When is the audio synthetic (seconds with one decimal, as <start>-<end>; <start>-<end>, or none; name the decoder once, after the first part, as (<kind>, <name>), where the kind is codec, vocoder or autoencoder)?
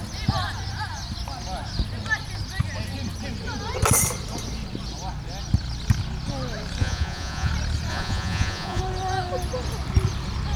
6.8-7.5 (vocoder, Vocos); 7.9-8.8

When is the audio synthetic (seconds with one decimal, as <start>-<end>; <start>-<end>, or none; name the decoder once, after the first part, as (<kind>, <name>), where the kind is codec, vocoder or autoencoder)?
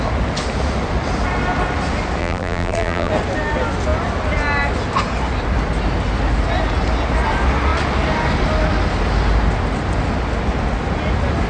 2.2-3.1 (vocoder, BigVGAN v2)